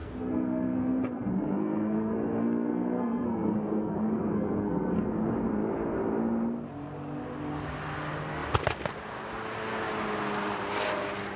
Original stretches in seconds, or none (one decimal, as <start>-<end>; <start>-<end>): 5.1-11.4